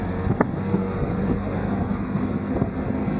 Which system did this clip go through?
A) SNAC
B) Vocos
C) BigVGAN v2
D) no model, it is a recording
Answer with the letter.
A